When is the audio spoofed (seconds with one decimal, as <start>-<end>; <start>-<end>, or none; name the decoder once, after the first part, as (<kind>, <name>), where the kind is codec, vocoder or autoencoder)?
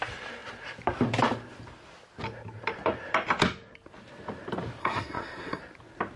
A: 4.8-5.6 (codec, SNAC)